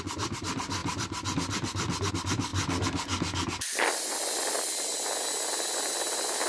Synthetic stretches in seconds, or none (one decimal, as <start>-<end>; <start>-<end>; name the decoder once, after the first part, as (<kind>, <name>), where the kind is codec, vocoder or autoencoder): none